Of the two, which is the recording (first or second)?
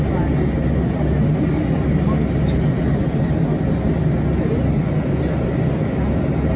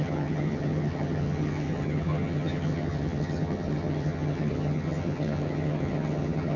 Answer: first